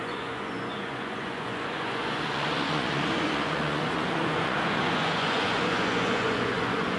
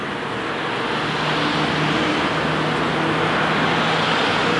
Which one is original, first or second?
second